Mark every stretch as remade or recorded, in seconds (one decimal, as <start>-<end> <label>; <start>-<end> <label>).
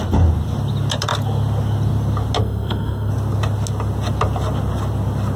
0.0-2.4 recorded; 2.4-3.1 remade; 3.1-5.4 recorded